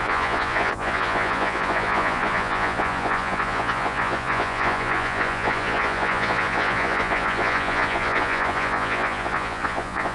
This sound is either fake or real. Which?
fake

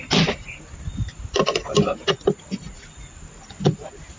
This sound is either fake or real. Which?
real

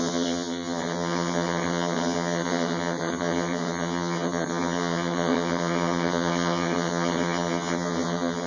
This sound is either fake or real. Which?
fake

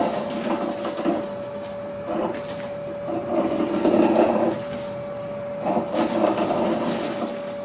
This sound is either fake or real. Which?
fake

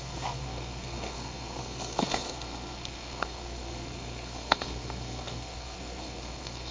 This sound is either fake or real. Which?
fake